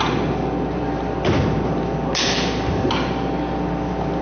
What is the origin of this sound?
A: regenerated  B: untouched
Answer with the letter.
B